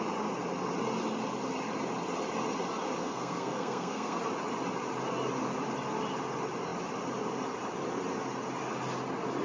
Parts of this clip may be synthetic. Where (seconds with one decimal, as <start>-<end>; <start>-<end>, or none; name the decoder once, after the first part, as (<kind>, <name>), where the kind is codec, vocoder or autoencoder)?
3.0-4.2 (codec, SNAC)